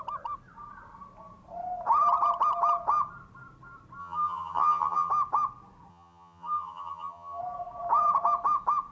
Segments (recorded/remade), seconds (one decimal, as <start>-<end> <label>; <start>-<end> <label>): 0.0-4.0 recorded; 4.0-5.1 remade; 5.1-5.9 recorded; 5.9-7.4 remade; 7.4-8.9 recorded